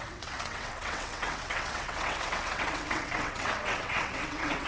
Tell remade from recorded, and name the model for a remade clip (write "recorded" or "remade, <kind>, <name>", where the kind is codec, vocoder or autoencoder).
remade, vocoder, WaveNeXt